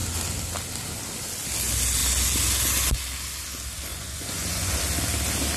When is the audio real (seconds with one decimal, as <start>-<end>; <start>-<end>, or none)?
0.0-3.9; 4.8-5.6